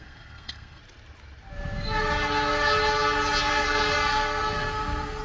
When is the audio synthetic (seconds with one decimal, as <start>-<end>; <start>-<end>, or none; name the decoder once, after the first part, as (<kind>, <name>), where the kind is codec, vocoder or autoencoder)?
0.0-0.8 (codec, SNAC); 3.5-5.2